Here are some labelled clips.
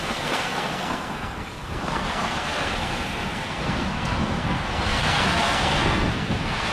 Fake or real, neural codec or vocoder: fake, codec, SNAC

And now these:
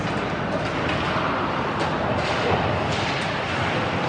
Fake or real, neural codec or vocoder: real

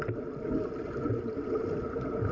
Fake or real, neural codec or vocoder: real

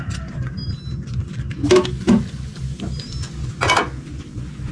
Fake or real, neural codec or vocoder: real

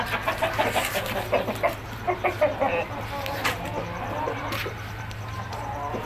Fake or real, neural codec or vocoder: real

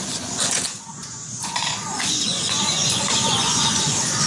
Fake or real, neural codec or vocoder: fake, vocoder, Vocos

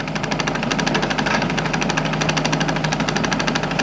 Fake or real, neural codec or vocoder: real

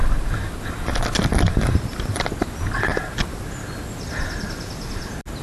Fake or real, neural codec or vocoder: real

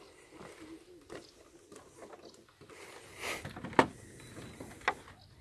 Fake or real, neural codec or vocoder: real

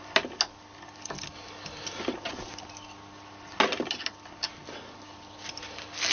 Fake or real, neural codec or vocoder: real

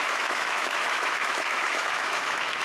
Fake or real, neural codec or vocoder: fake, autoencoder, DAC-VAE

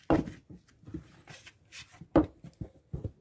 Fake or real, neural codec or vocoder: real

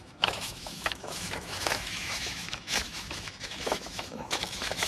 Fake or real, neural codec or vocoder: fake, autoencoder, DAC-VAE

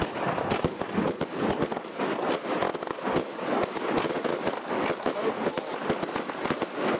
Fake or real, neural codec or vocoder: real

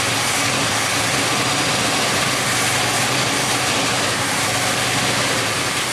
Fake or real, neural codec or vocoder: real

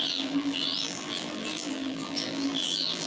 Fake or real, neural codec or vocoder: fake, vocoder, BigVGAN v2